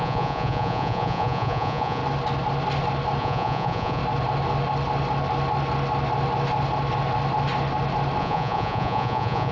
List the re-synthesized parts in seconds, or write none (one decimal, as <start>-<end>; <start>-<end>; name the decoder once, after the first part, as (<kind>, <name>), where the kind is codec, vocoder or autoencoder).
0.0-2.0 (vocoder, Vocos); 3.2-4.0; 8.2-9.5